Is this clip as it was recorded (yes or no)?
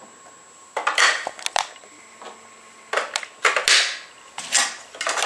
yes